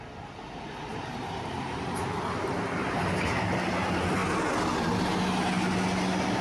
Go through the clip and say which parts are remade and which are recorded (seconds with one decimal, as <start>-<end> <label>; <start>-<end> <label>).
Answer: 0.0-0.9 recorded; 0.9-1.8 remade; 1.8-6.4 recorded